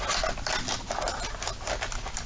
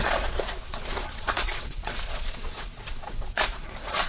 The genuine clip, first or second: first